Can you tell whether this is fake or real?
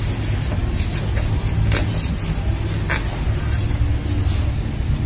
real